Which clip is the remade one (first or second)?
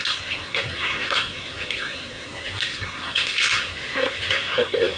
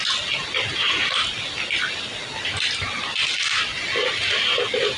first